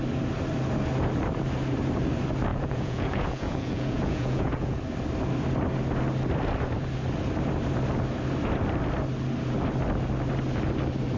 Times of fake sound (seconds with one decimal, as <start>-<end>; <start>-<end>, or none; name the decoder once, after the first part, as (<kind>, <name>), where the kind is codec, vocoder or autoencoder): 2.5-4.8 (vocoder, Vocos)